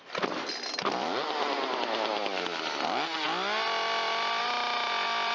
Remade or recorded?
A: recorded